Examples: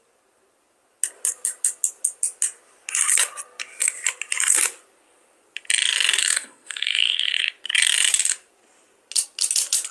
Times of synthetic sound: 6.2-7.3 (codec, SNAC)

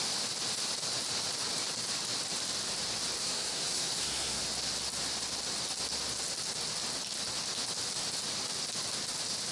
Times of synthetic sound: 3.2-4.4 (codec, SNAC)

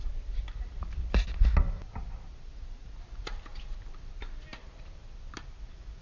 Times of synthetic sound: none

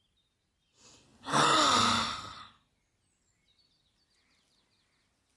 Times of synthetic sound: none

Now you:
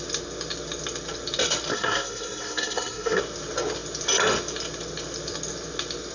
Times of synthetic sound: 1.7-3.2 (codec, SNAC)